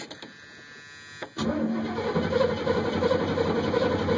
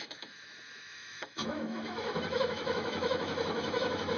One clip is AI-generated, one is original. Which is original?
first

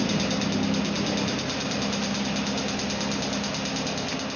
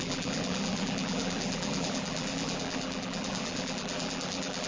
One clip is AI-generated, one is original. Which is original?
first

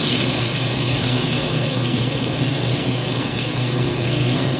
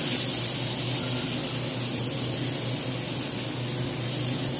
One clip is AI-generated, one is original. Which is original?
second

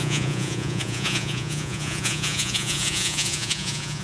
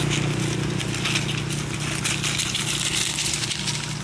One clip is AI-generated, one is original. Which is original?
second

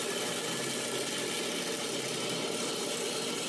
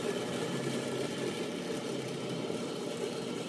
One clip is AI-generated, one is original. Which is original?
first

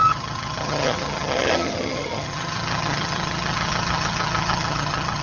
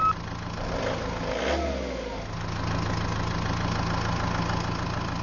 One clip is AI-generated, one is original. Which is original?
second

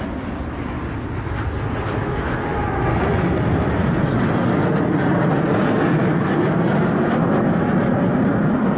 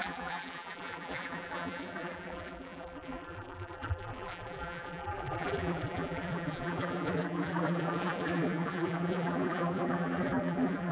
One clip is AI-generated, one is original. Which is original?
first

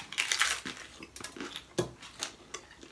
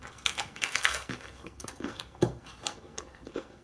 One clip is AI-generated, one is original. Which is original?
first